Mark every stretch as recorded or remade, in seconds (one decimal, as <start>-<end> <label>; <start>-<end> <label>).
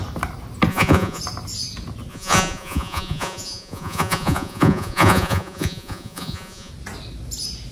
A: 0.0-0.7 recorded; 0.7-1.2 remade; 1.2-2.1 recorded; 2.1-6.7 remade; 6.7-7.7 recorded